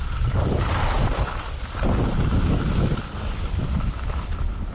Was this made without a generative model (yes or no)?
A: no